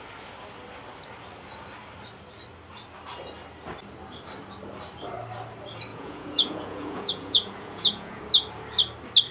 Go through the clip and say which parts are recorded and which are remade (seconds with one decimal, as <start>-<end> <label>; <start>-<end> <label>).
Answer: 0.0-5.9 recorded; 5.9-8.2 remade; 8.2-9.3 recorded